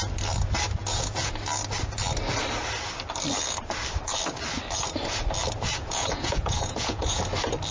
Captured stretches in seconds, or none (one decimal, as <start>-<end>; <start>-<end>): 0.0-0.8; 1.3-5.7; 7.2-7.7